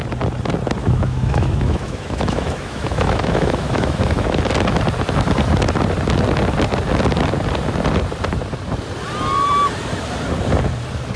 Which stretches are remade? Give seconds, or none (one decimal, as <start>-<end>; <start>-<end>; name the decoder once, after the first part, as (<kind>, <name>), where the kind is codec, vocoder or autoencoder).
0.8-4.4 (autoencoder, DAC-VAE)